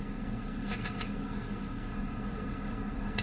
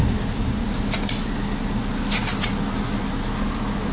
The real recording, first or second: second